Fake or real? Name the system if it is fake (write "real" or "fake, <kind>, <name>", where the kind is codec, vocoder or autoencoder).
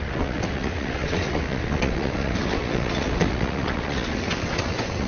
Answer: fake, vocoder, WaveNeXt